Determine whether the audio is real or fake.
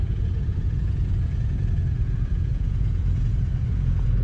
fake